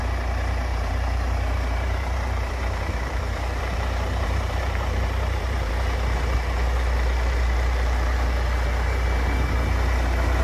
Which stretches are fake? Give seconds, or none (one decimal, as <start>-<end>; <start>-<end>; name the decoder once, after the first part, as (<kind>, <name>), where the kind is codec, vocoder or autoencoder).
0.7-5.7 (vocoder, BigVGAN v2)